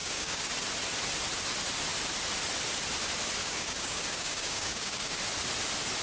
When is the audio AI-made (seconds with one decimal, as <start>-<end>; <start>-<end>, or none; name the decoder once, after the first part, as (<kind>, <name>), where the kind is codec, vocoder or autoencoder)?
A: 0.0-0.5 (codec, DAC); 3.4-5.2